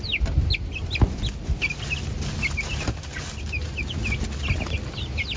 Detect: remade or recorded recorded